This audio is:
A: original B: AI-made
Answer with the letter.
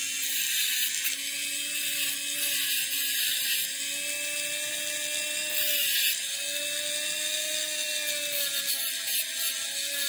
A